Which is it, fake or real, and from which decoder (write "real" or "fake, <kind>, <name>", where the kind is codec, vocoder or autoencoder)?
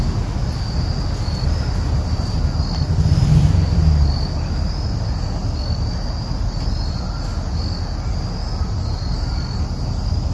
real